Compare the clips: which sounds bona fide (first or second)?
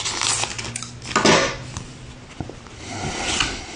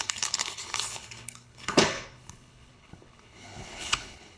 first